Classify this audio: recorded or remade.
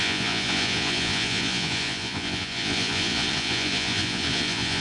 remade